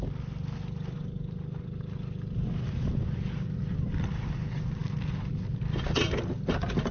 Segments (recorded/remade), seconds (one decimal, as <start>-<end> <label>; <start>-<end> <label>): 0.0-6.9 recorded